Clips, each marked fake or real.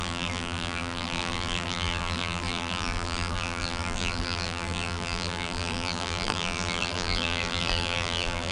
fake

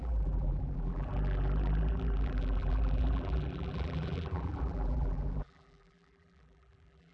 fake